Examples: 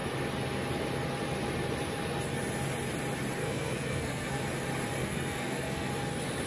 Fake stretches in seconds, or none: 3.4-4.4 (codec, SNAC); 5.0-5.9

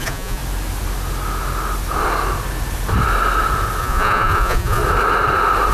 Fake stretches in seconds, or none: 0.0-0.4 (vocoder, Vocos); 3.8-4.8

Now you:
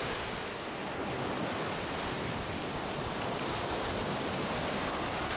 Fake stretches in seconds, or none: none